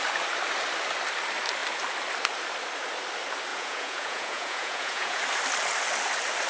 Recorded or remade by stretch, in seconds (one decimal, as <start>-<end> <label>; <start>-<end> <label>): 0.0-3.5 recorded; 3.5-5.2 remade; 5.2-6.5 recorded